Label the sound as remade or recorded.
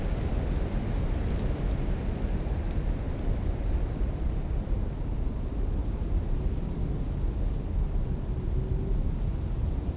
recorded